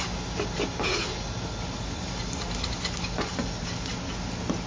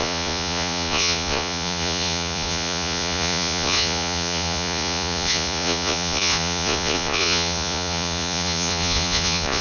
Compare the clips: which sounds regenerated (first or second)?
second